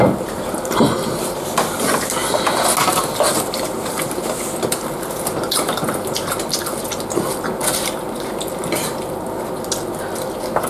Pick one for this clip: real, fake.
real